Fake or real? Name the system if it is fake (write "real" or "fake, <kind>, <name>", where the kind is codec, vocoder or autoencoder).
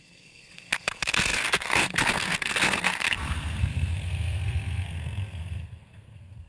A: fake, codec, SNAC